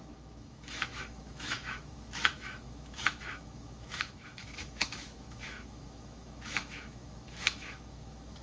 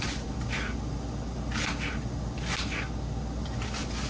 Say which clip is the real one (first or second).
second